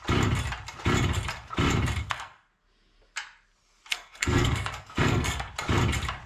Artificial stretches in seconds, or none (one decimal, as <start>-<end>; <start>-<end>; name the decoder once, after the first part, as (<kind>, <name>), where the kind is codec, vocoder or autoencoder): 2.0-2.5 (codec, SNAC); 3.9-5.5